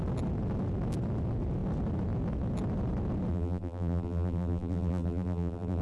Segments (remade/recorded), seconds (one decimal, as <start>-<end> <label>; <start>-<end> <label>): 0.0-3.3 recorded; 3.3-5.8 remade